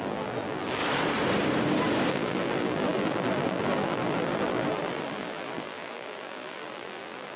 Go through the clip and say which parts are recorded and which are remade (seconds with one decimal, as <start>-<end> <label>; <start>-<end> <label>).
0.0-0.8 remade; 0.8-2.1 recorded; 2.1-7.4 remade